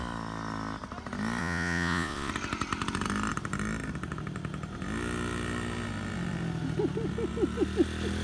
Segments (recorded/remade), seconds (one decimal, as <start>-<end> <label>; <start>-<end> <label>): 0.0-1.4 recorded; 1.4-2.3 remade; 2.3-8.2 recorded